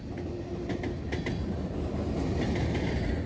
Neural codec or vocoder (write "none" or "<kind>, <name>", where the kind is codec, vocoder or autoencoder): none